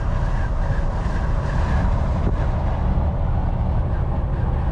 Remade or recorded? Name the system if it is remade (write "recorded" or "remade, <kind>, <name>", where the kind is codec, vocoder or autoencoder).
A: recorded